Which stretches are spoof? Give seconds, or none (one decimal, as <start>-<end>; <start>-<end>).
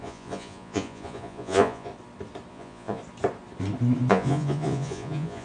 0.0-1.9; 2.5-3.0; 4.1-5.4